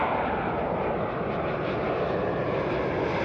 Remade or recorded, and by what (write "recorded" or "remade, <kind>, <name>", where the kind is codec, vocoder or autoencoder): recorded